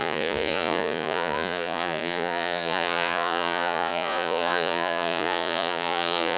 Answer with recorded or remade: remade